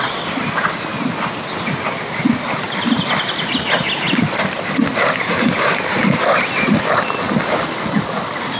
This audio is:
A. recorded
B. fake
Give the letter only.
A